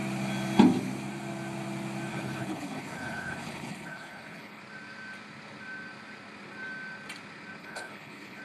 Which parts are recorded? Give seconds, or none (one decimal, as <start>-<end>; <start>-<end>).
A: 0.0-2.1; 4.6-7.6